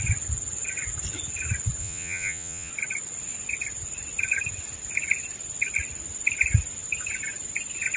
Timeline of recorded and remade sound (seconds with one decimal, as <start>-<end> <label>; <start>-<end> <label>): 0.0-1.8 recorded; 1.8-2.7 remade; 2.7-8.0 recorded